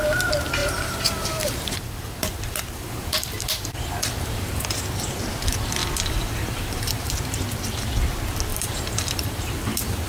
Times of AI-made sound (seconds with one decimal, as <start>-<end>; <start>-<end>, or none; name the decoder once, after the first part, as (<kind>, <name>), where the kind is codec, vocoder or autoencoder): 0.6-4.8 (vocoder, BigVGAN v2); 5.8-7.1; 8.5-10.1